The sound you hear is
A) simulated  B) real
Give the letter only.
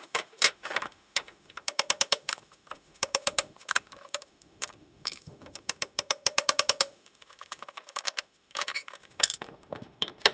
A